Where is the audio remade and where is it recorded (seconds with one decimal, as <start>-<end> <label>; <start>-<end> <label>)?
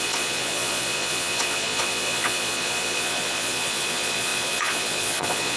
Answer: 0.0-5.6 remade